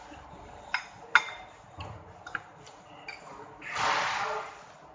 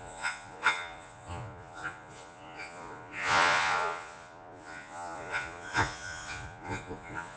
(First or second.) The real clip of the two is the first